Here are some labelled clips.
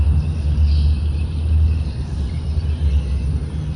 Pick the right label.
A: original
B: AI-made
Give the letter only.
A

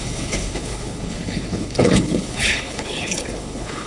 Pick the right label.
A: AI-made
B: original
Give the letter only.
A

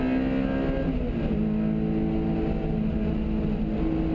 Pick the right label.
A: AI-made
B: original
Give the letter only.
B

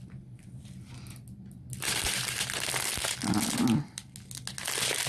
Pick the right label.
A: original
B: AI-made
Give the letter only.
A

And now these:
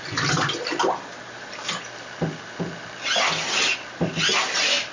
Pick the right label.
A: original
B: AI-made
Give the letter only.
A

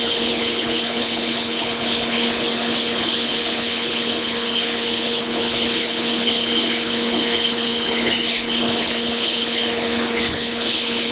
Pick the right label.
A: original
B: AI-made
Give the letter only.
B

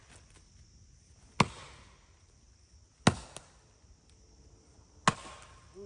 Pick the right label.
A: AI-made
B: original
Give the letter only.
B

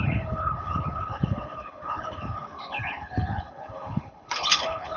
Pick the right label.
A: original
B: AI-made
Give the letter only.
B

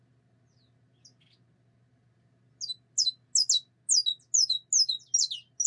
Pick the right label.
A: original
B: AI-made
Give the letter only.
A